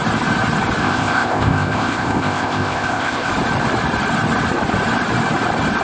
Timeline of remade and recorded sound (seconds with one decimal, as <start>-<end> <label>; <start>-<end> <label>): 0.0-0.8 recorded; 0.8-3.3 remade; 3.3-5.8 recorded